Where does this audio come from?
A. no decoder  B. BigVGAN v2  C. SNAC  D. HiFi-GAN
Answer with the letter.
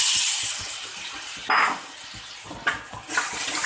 A